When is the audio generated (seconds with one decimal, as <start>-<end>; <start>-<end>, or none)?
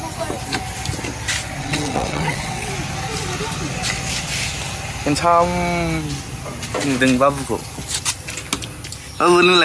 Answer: 1.6-2.7